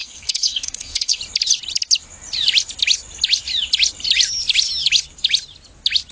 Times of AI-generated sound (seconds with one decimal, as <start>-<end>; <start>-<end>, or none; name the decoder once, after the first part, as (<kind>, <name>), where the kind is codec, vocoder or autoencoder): 0.0-1.2 (codec, SNAC)